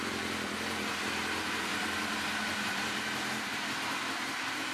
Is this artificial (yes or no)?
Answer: no